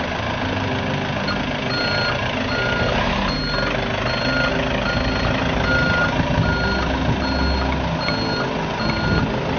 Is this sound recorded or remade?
recorded